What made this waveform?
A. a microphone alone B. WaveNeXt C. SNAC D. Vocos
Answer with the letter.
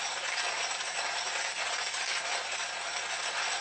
A